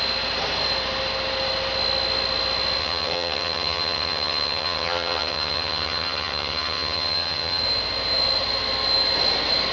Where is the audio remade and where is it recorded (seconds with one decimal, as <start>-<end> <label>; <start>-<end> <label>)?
0.0-2.8 recorded; 2.8-7.6 remade; 7.6-9.7 recorded